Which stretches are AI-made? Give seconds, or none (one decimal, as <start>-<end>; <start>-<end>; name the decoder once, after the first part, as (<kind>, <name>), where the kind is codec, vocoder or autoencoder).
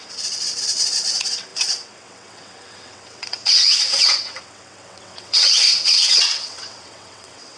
0.0-7.6 (vocoder, WaveNeXt)